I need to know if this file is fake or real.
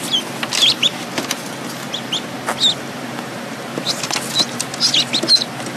real